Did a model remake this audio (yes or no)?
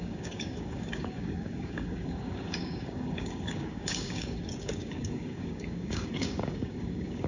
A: yes